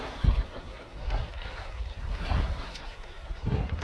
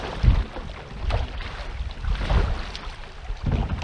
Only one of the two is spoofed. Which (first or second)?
first